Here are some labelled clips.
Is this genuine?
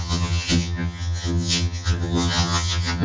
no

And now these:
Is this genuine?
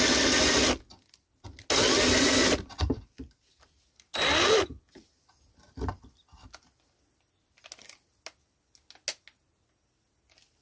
yes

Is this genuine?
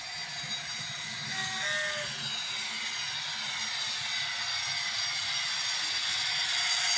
yes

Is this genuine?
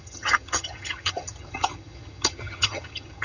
no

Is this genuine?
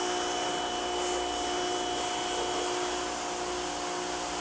yes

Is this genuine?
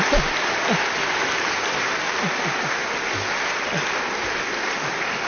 yes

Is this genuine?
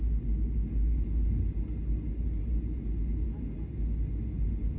yes